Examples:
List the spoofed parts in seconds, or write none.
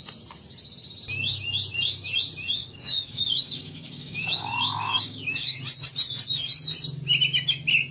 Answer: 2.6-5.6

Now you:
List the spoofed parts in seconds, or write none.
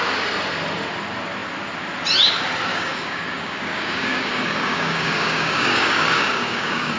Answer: 2.7-7.0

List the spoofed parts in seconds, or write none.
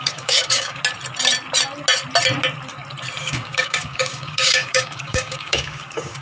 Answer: 0.0-0.8; 3.2-6.2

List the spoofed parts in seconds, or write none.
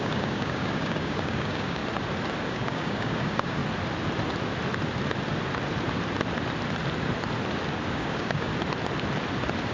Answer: 0.0-1.8; 2.5-3.6; 7.9-8.5